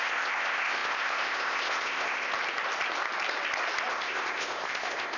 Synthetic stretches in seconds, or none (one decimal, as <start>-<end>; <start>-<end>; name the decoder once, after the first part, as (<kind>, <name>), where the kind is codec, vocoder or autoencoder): 0.0-2.3 (codec, ZipCodec); 3.9-5.2